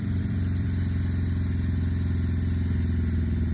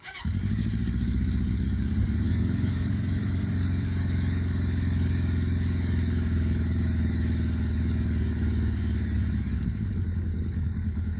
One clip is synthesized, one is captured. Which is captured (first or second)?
first